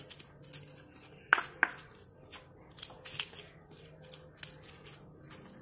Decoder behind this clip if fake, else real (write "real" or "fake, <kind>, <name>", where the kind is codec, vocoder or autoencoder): real